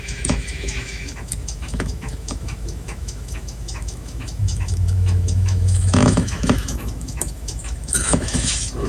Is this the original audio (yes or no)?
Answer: no